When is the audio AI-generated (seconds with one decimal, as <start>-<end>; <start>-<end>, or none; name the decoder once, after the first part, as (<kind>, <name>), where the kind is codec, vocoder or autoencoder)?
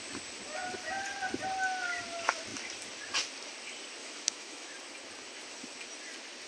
4.0-4.7 (autoencoder, DAC-VAE)